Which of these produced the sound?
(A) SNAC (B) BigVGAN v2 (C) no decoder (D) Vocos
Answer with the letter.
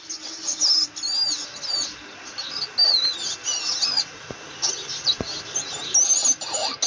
C